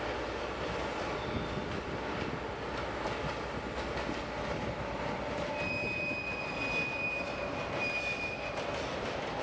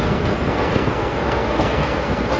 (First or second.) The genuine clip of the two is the first